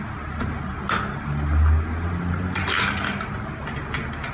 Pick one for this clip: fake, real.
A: real